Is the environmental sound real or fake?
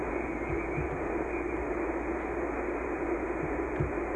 real